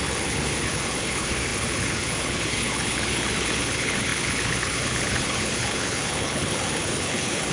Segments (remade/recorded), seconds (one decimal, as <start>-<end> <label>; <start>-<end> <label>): 0.0-7.5 remade